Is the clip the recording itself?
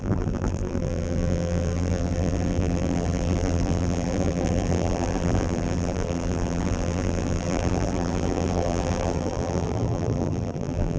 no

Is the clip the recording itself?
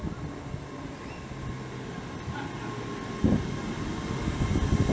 yes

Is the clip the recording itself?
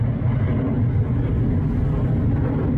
yes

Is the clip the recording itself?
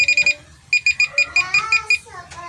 yes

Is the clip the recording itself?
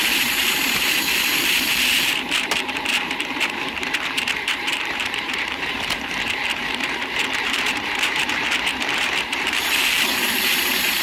no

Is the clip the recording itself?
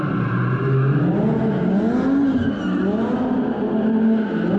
yes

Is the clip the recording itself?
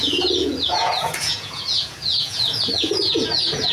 no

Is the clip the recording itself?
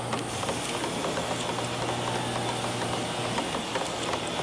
yes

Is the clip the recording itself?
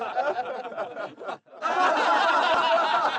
yes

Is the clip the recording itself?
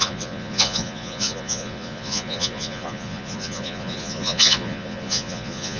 no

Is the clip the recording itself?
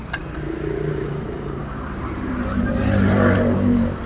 no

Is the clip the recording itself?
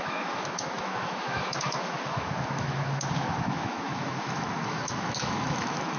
no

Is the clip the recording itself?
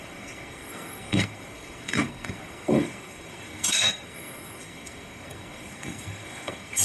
no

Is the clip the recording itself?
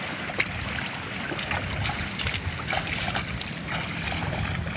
yes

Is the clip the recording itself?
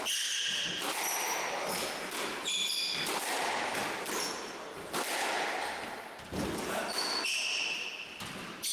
yes